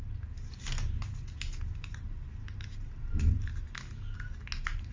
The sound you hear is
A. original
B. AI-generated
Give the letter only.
A